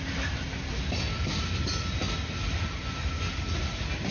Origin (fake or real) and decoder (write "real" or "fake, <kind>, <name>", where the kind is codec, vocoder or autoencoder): real